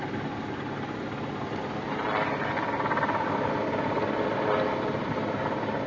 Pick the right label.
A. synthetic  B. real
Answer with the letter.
B